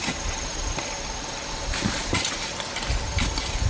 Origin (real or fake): real